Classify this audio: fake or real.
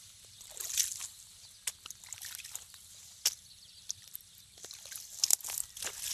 real